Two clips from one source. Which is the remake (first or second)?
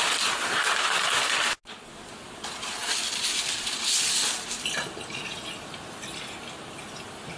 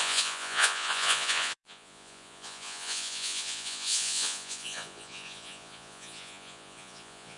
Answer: second